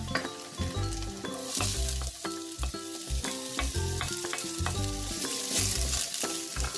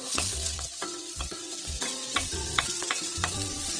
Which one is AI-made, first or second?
second